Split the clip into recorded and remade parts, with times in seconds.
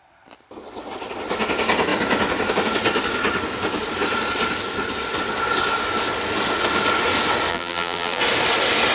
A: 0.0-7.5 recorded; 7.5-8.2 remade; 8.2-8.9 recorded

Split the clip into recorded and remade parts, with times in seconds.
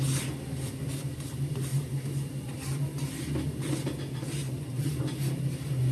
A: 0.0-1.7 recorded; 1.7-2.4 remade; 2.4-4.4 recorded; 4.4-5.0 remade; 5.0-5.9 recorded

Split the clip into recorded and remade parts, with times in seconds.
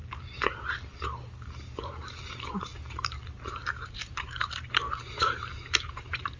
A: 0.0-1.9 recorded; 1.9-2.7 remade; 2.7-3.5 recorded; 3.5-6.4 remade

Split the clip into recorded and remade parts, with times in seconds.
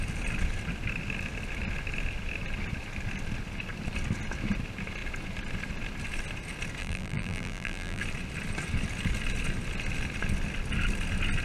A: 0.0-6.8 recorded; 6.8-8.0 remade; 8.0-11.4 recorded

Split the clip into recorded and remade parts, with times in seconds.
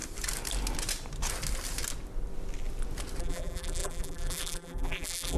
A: 0.0-3.2 recorded; 3.2-5.4 remade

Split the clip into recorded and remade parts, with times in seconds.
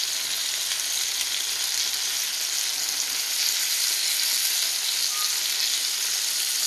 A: 0.0-6.7 recorded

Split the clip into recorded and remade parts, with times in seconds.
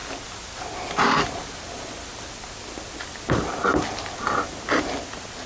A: 0.0-5.5 recorded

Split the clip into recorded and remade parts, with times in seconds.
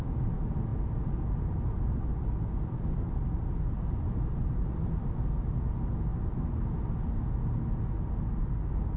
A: 0.0-0.7 recorded; 0.7-4.8 remade; 4.8-9.0 recorded